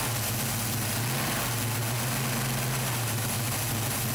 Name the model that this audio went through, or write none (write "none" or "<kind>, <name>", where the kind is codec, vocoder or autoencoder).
none